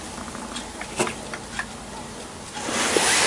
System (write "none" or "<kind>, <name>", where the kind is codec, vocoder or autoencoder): none